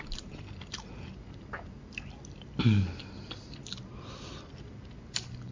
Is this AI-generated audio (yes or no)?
no